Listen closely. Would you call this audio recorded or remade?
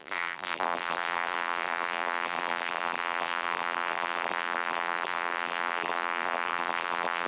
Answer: remade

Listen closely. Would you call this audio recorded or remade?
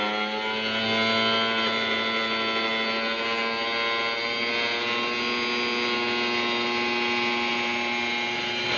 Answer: recorded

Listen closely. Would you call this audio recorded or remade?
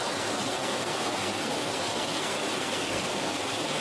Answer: remade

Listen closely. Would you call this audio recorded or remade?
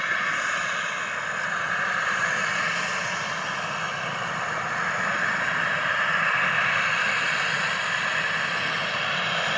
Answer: recorded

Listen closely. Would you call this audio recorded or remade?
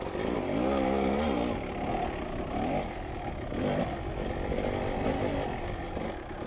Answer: recorded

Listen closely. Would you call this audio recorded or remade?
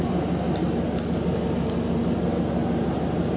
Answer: recorded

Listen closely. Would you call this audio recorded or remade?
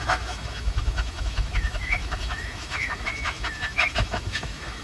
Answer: remade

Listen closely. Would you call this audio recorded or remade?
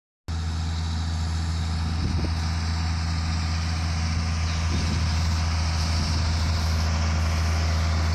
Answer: recorded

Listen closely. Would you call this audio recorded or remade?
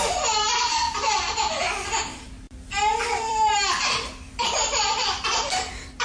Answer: remade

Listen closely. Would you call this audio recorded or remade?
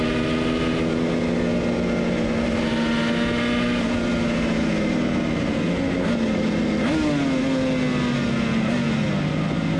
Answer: recorded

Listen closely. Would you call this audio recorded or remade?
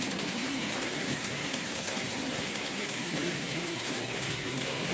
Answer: remade